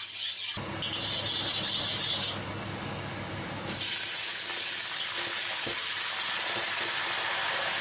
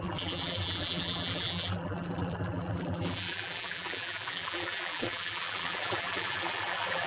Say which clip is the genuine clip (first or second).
first